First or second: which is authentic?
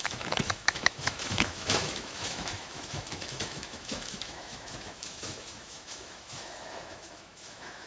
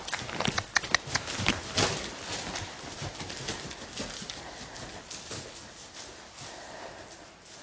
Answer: second